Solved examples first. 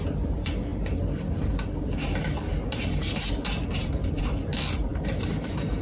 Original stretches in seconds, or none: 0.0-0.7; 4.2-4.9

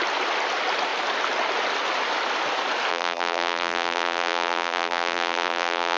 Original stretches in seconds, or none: 0.0-2.9

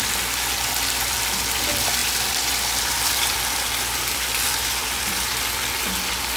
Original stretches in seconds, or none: 0.0-2.0; 5.8-6.4

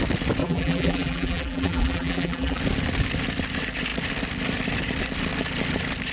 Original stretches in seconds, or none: 0.0-0.4; 2.6-6.1

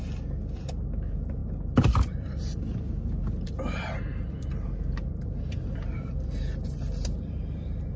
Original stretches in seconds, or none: 0.0-8.0

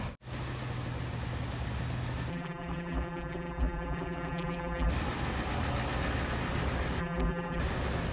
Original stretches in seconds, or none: 0.0-2.3; 4.9-7.0; 7.6-8.1

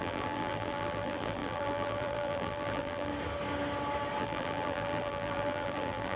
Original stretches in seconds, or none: 3.1-4.2

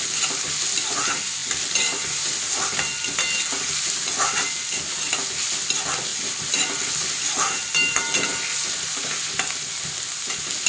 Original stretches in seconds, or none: 0.0-1.4; 2.8-6.1; 9.6-10.7